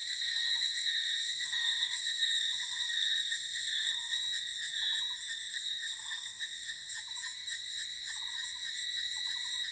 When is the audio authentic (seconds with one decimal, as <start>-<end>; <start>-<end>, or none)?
4.2-5.5; 6.9-9.7

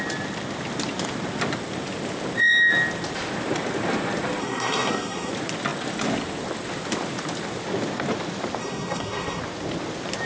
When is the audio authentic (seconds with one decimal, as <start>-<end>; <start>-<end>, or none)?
0.0-4.4; 5.3-8.6; 9.4-10.3

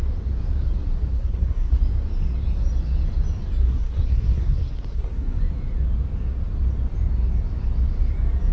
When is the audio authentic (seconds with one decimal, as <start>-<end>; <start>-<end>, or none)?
0.0-1.1; 1.8-3.6; 5.4-8.5

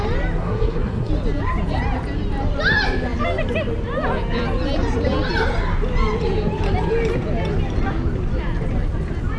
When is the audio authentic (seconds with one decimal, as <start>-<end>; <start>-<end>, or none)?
0.0-0.4; 1.1-9.4

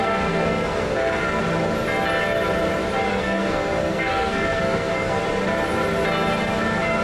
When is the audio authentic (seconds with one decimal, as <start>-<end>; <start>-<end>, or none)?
1.4-3.1; 5.2-7.0